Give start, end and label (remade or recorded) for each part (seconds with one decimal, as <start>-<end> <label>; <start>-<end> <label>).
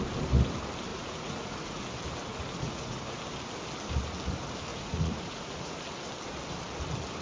0.0-0.9 recorded; 0.9-1.8 remade; 1.8-2.3 recorded; 2.3-3.2 remade; 3.2-4.7 recorded; 4.7-5.8 remade; 5.8-7.2 recorded